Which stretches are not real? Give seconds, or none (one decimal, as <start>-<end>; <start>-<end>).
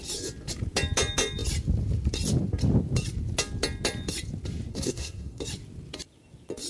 4.7-5.4